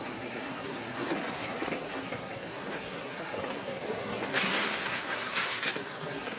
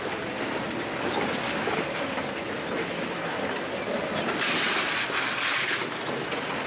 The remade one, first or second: first